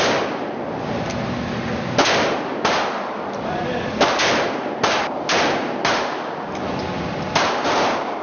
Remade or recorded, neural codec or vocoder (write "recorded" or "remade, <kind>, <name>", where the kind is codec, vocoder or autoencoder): recorded